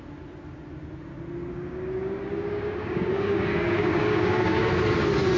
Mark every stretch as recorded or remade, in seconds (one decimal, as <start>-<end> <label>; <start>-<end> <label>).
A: 0.0-1.5 recorded; 1.5-4.7 remade; 4.7-5.4 recorded